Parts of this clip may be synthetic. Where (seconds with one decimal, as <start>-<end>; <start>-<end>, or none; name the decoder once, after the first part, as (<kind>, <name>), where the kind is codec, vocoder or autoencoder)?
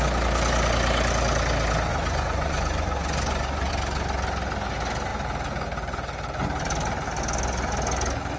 1.9-3.7 (vocoder, Vocos)